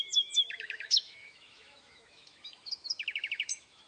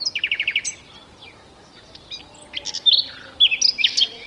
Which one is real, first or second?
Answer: second